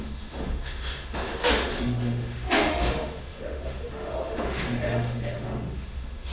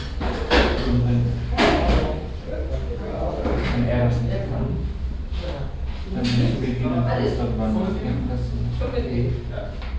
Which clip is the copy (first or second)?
first